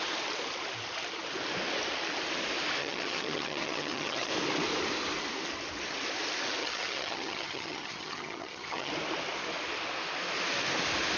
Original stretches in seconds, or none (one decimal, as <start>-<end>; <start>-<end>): 0.0-2.8; 4.3-6.6; 8.9-11.2